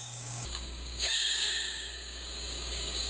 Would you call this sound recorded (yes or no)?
no